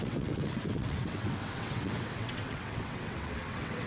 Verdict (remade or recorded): remade